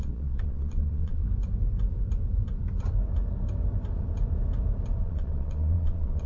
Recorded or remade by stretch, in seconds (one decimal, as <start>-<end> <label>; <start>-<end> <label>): 0.0-1.2 remade; 1.2-5.0 recorded; 5.0-6.3 remade